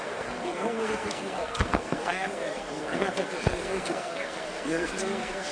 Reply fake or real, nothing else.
fake